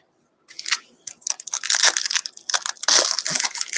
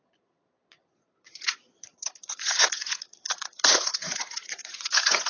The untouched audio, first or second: first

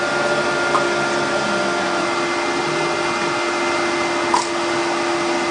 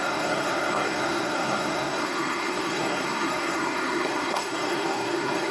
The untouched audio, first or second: first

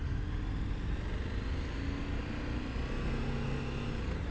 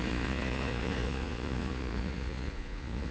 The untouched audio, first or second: first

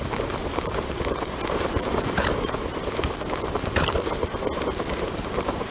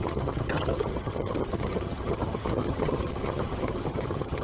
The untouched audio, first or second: first